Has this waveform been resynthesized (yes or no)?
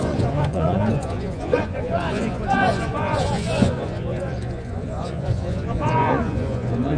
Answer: yes